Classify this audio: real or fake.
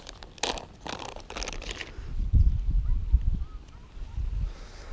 real